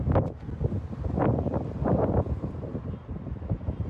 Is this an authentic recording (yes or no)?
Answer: yes